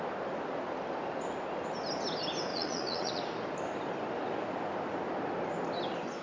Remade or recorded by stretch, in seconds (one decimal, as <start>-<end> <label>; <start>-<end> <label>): 0.0-2.5 recorded; 2.5-3.2 remade; 3.2-6.2 recorded